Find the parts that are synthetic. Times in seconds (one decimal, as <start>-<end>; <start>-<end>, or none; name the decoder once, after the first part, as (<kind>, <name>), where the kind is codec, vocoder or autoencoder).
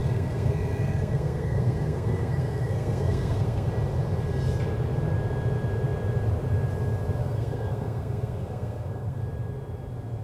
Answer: 0.0-3.7 (codec, SNAC); 7.2-9.2